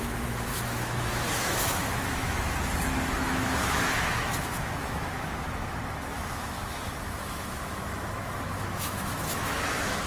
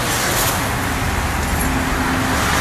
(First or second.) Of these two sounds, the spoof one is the first